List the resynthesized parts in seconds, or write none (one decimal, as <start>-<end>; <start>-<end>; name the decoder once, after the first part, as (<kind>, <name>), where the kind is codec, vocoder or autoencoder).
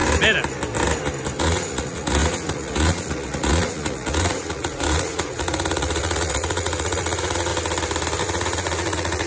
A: 1.4-7.5 (vocoder, Vocos); 8.2-9.3